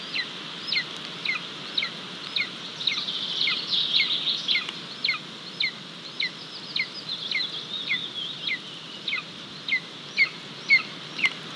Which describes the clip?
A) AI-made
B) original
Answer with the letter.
B